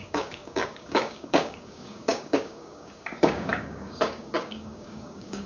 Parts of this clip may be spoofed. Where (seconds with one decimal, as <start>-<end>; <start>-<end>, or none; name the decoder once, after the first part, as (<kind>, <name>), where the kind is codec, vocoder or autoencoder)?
0.0-5.5 (codec, DAC)